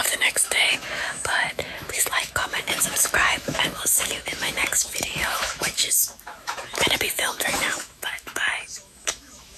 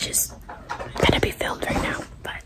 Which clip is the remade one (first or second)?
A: first